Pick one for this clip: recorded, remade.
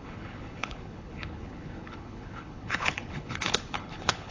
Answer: remade